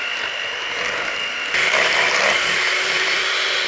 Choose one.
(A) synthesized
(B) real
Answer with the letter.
A